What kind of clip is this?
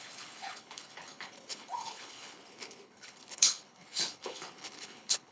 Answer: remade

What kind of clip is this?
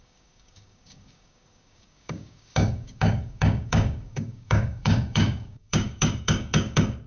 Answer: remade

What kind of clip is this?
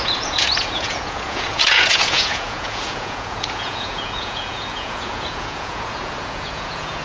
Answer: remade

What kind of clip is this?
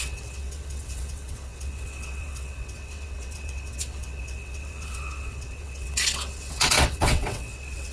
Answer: remade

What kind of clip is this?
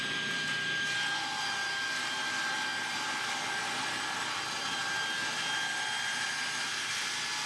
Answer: recorded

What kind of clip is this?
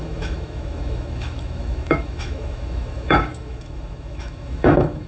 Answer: remade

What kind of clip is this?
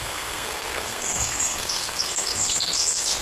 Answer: remade